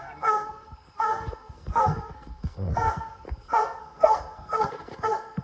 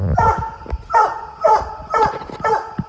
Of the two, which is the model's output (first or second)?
first